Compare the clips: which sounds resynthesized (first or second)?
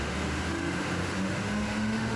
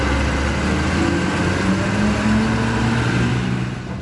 first